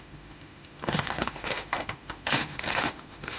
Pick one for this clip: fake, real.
fake